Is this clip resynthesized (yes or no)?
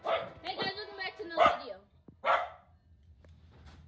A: no